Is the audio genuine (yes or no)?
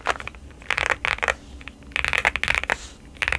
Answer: yes